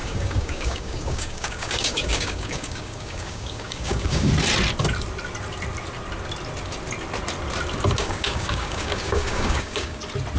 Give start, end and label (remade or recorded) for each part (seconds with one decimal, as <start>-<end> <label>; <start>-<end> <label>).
0.0-4.3 remade; 4.3-8.0 recorded; 8.0-10.0 remade; 10.0-10.4 recorded